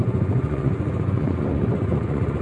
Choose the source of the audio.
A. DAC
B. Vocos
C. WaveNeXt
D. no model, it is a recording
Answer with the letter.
B